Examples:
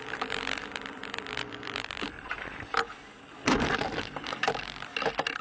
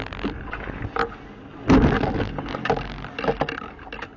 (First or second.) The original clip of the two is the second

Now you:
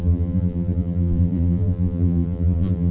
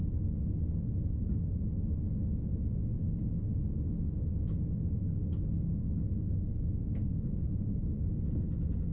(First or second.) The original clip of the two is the second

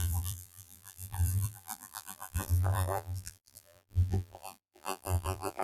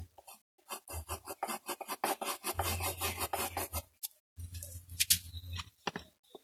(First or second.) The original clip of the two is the second